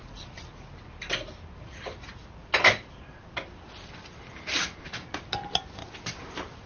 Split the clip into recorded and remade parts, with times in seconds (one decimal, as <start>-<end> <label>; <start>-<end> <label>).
0.0-2.4 recorded; 2.4-4.8 remade; 4.8-5.8 recorded; 5.8-6.7 remade